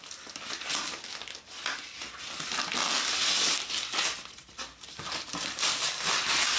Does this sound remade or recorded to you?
recorded